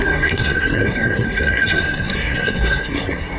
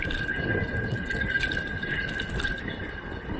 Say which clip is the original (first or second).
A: second